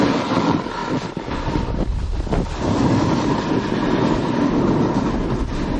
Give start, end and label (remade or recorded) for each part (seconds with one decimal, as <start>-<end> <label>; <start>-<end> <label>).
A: 0.0-5.8 recorded